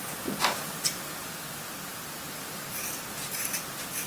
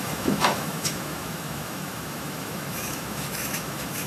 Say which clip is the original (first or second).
first